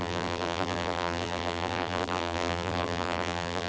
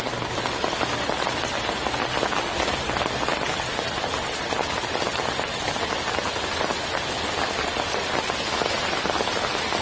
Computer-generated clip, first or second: first